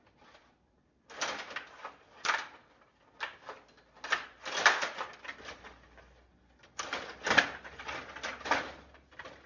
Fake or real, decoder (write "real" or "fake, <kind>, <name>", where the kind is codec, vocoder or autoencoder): real